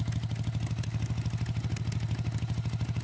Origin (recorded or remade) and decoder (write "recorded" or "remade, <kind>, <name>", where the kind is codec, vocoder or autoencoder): recorded